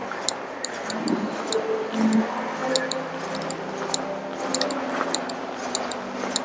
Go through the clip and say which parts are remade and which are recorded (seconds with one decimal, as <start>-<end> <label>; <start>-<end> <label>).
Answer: 0.0-6.4 recorded

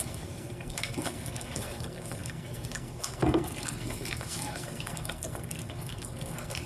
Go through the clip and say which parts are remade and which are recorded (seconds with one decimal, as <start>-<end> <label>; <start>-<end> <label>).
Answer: 0.0-6.7 remade